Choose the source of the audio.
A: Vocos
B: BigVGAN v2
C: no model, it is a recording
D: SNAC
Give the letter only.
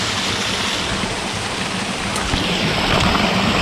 C